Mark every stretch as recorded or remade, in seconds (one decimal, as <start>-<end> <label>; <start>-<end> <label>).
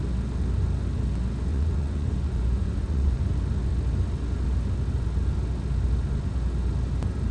0.0-1.5 recorded; 1.5-3.3 remade; 3.3-7.3 recorded